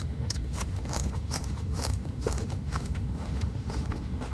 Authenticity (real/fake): fake